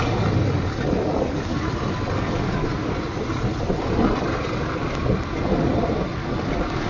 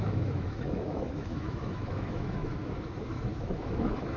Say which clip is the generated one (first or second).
second